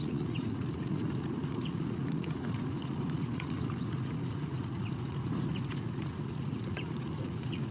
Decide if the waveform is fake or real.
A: fake